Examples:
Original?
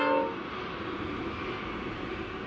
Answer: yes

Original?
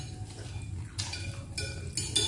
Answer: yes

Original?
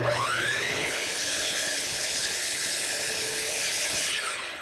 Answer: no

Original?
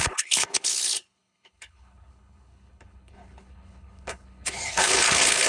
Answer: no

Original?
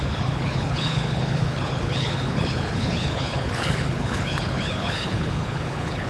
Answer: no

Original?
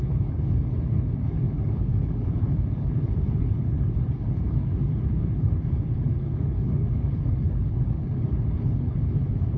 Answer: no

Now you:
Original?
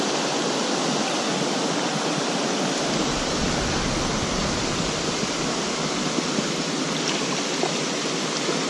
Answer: yes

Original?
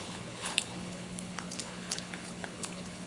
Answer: no